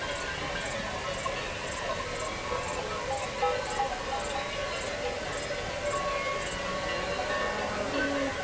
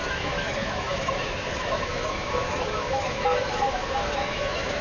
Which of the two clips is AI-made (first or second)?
second